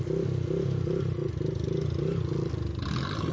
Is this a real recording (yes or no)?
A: yes